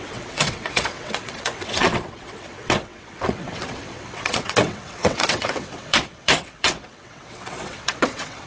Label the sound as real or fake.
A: fake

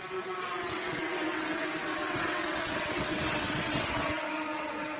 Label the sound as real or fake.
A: fake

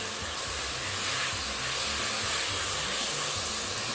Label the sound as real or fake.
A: real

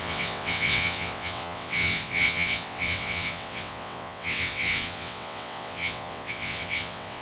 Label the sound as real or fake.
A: fake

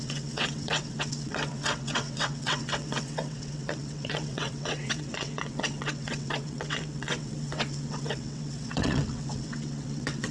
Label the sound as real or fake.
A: fake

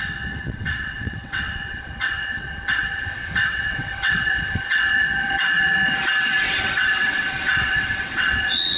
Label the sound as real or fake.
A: fake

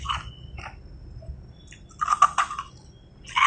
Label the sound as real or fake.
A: real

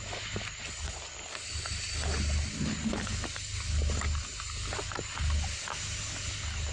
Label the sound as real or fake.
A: real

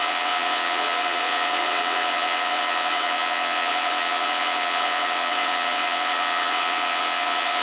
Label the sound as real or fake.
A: fake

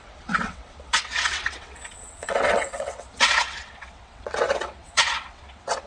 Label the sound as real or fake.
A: fake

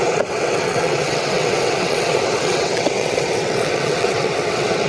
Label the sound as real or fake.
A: fake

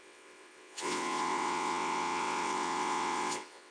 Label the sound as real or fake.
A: fake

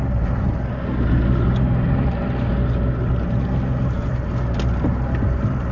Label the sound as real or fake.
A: real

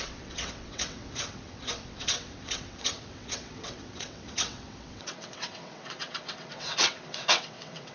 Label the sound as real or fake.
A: fake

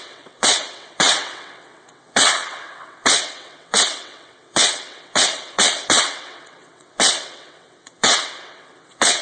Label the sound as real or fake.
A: fake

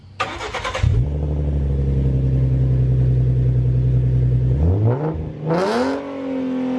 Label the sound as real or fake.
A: real